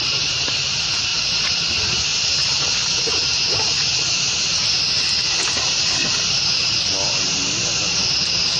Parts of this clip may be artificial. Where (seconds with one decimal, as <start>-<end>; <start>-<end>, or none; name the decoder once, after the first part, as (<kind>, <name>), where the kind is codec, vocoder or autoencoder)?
1.1-1.7 (vocoder, BigVGAN v2)